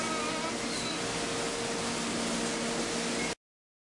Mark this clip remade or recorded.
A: recorded